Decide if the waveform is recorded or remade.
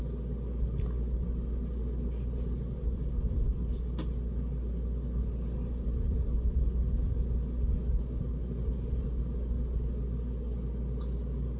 recorded